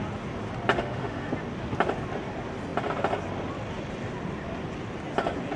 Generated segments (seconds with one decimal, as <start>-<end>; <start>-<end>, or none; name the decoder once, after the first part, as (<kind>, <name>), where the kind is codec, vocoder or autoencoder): 0.7-1.3 (autoencoder, DAC-VAE)